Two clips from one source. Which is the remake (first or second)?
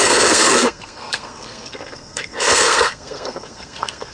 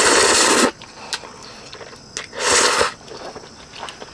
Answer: first